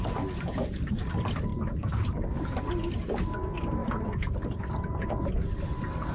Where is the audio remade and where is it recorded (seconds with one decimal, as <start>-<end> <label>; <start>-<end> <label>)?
0.0-1.5 recorded; 1.5-2.3 remade; 2.3-3.8 recorded; 3.8-4.3 remade; 4.3-6.1 recorded